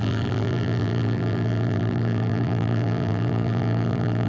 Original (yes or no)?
no